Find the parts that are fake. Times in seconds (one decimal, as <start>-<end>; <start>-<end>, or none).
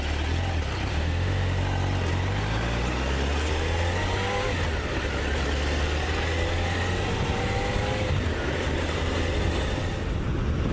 0.9-1.6